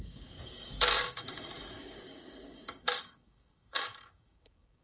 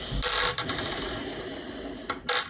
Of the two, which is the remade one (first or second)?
first